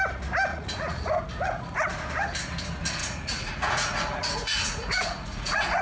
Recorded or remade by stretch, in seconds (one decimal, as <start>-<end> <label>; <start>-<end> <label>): 0.0-0.5 recorded; 0.5-1.2 remade; 1.2-3.0 recorded; 3.0-5.8 remade